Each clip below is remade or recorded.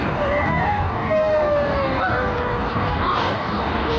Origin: remade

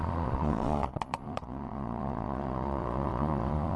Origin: remade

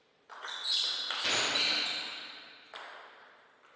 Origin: recorded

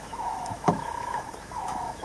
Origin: remade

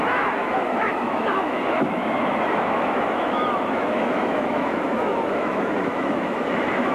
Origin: remade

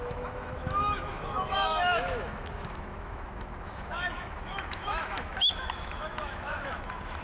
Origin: remade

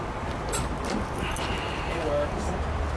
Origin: recorded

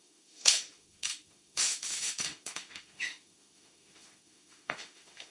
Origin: remade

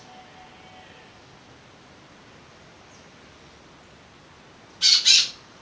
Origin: recorded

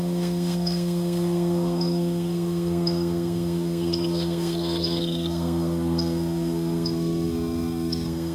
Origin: remade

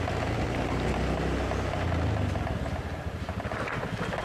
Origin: recorded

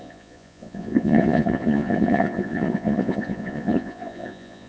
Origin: remade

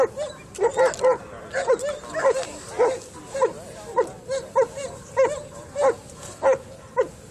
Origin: recorded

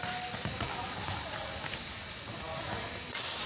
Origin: recorded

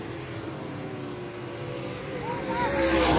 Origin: recorded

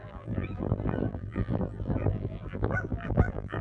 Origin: remade